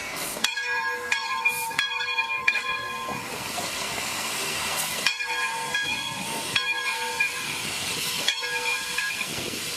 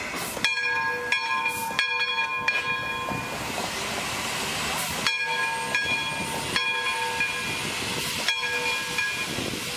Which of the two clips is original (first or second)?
second